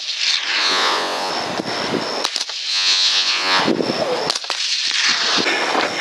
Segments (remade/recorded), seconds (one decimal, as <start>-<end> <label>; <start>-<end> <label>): 0.0-0.6 recorded; 0.6-1.3 remade; 1.3-2.7 recorded; 2.7-3.6 remade; 3.6-6.0 recorded